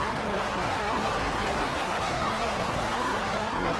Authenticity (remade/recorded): remade